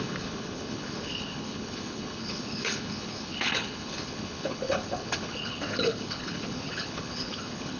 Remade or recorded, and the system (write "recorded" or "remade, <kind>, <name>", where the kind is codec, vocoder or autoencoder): remade, codec, HILCodec